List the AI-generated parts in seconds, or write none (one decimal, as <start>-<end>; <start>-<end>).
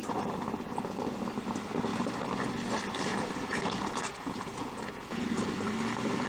0.7-1.2; 3.1-5.4